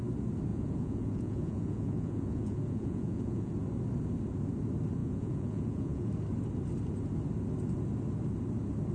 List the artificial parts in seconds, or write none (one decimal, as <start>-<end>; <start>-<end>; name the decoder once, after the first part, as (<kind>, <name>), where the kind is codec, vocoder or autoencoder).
0.5-3.5 (vocoder, Vocos); 5.0-6.1